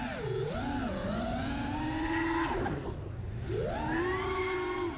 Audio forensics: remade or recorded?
recorded